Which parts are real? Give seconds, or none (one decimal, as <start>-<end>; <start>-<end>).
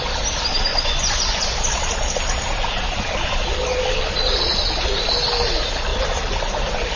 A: 0.0-0.7; 1.4-7.0